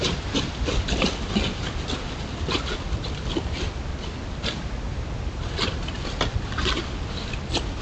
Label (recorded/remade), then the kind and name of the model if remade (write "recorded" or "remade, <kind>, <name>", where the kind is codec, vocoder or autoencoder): recorded